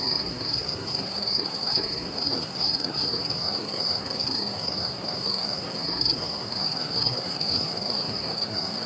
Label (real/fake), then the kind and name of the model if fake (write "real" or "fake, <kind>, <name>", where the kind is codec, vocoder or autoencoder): fake, codec, SNAC